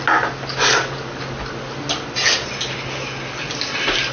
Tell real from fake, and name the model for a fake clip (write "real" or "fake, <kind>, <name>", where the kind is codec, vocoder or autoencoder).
real